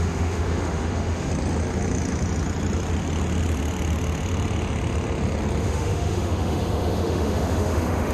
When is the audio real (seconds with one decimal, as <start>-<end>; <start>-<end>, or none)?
1.3-5.6